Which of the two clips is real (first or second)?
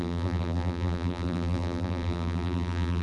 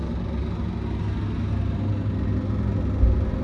second